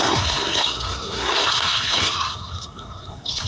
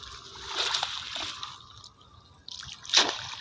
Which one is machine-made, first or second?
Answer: first